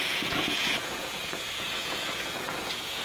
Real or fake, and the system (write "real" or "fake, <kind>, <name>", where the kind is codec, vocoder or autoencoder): fake, vocoder, Vocos